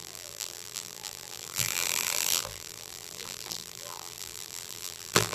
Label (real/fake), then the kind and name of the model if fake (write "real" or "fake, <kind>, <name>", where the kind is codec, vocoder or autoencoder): fake, vocoder, BigVGAN v2